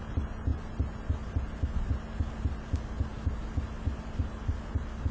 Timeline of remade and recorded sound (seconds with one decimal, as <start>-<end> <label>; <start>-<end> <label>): 0.0-5.1 recorded